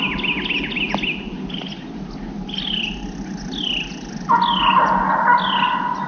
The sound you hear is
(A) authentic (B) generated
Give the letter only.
A